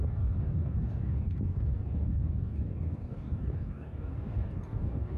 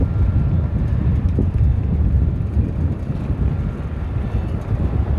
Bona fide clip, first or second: second